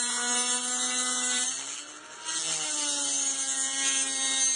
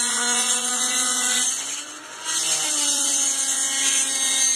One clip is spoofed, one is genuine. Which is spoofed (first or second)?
second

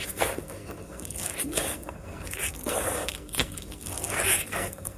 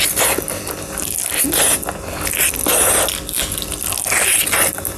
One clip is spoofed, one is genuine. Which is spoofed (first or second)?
first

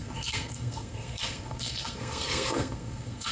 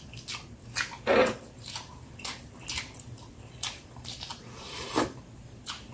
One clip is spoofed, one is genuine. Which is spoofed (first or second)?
first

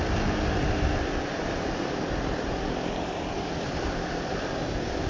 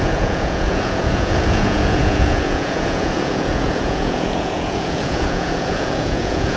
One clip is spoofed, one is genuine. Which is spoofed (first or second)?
second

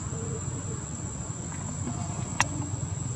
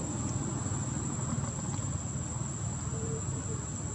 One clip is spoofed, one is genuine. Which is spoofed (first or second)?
first